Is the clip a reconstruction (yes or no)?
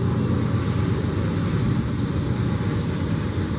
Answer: no